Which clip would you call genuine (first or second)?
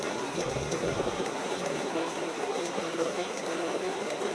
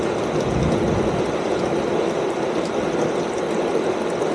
second